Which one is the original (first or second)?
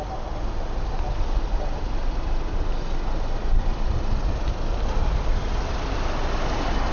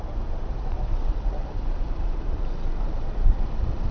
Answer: first